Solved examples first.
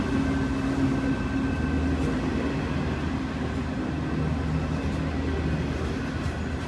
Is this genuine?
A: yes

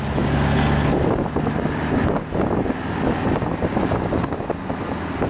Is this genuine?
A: yes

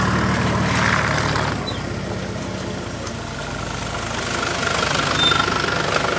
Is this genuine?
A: yes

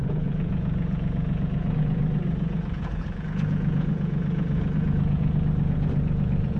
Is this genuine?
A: no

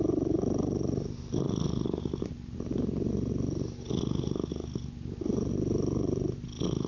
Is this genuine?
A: yes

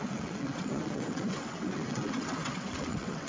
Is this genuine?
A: no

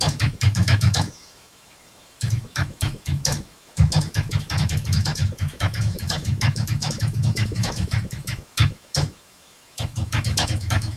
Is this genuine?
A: no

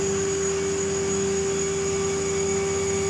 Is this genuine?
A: yes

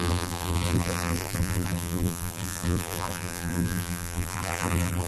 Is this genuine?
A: no